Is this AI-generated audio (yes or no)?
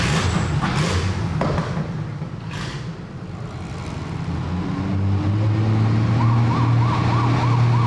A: no